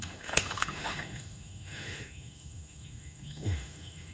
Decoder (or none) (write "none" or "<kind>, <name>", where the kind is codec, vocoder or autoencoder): autoencoder, DAC-VAE